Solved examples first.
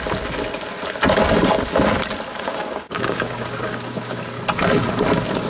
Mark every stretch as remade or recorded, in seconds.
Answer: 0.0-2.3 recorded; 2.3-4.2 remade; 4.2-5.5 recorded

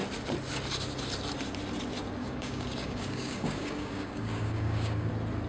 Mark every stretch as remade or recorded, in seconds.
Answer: 0.0-2.2 recorded; 2.2-5.1 remade; 5.1-5.5 recorded

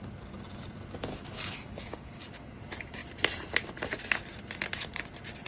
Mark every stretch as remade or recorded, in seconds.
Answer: 0.0-1.1 recorded; 1.1-2.6 remade; 2.6-5.5 recorded

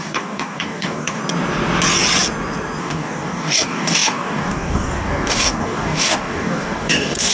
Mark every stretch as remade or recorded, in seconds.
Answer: 0.0-1.2 remade; 1.2-2.8 recorded; 2.8-7.3 remade

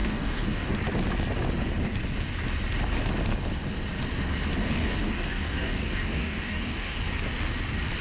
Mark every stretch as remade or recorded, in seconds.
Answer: 0.0-0.7 remade; 0.7-4.6 recorded; 4.6-7.0 remade; 7.0-8.0 recorded

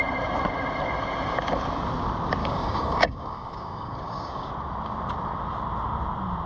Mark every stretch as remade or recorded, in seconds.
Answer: 0.0-2.4 recorded; 2.4-4.5 remade; 4.5-6.5 recorded

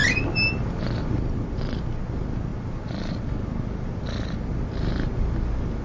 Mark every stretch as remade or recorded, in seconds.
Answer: 0.0-5.8 recorded

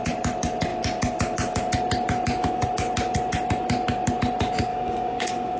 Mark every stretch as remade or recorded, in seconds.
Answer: 0.0-4.7 recorded; 4.7-5.6 remade